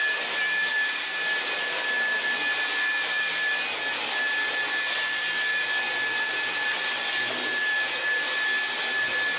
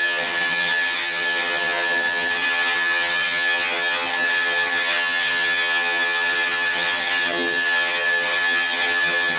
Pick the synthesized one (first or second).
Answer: second